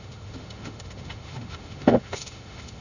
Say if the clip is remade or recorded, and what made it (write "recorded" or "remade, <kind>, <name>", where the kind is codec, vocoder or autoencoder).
remade, autoencoder, DAC-VAE